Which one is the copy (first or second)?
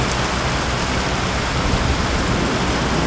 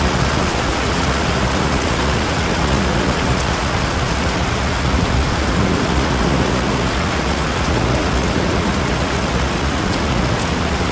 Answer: second